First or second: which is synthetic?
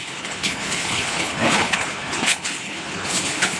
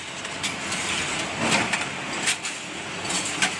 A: first